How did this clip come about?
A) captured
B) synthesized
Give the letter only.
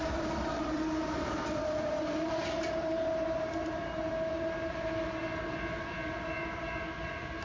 B